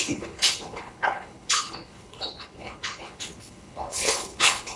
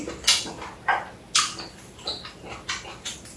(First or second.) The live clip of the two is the second